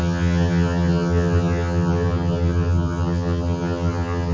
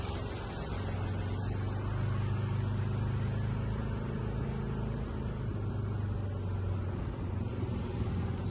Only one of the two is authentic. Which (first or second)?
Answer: second